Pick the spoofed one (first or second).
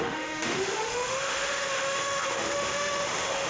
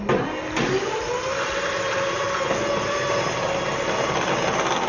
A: first